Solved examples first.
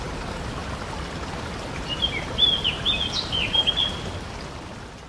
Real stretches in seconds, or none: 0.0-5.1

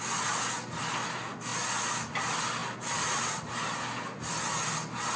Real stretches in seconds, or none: 0.0-5.2